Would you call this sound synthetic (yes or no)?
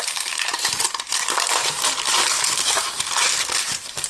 yes